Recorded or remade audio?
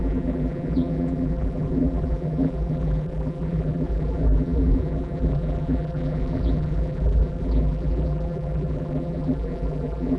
remade